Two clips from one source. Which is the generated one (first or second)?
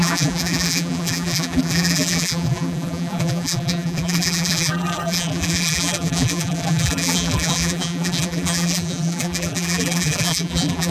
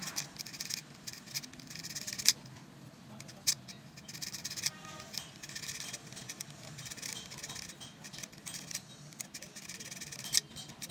first